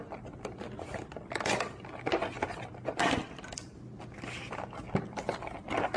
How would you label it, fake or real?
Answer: real